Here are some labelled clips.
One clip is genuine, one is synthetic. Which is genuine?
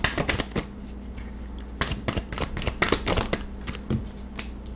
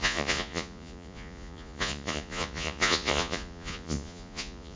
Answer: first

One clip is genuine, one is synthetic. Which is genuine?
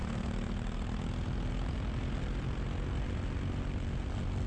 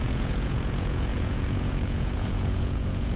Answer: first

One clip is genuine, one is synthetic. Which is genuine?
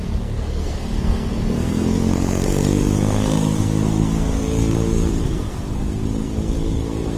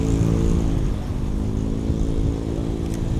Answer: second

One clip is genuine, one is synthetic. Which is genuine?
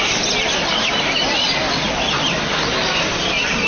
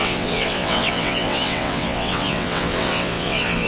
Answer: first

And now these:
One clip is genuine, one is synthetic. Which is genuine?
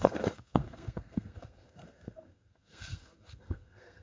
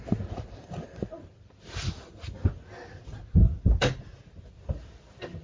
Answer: second